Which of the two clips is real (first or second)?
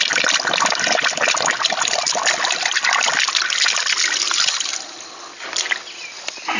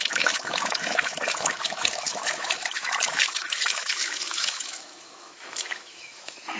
first